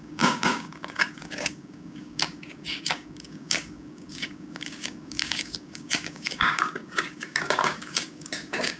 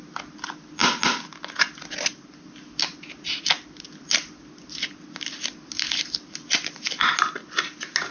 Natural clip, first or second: second